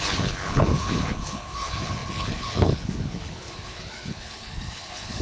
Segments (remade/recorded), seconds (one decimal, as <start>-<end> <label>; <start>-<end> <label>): 0.0-5.2 remade